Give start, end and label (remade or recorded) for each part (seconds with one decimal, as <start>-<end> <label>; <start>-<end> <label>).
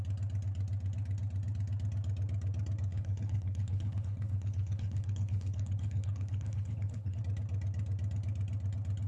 0.0-2.9 recorded; 2.9-7.2 remade; 7.2-9.1 recorded